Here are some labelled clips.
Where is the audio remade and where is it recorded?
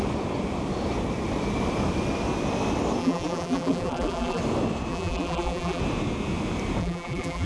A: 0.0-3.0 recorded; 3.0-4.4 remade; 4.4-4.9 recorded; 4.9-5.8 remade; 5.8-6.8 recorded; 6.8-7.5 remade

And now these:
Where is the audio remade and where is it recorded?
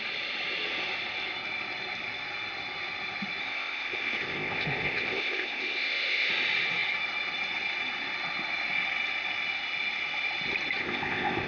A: 0.0-3.4 recorded; 3.4-6.3 remade; 6.3-10.8 recorded; 10.8-11.5 remade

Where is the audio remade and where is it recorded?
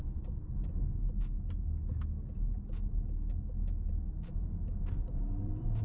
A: 0.0-0.6 remade; 0.6-4.1 recorded; 4.1-5.8 remade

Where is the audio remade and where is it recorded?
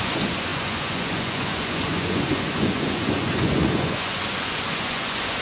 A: 0.0-5.4 remade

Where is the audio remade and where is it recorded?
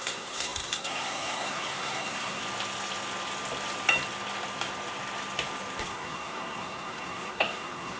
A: 0.0-2.4 remade; 2.4-5.8 recorded; 5.8-8.0 remade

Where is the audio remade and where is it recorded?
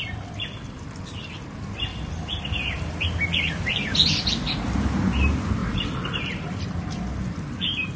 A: 0.0-1.9 recorded; 1.9-2.4 remade; 2.4-5.6 recorded; 5.6-6.6 remade; 6.6-8.0 recorded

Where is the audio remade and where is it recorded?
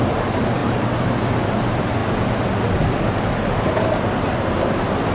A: 0.0-5.1 recorded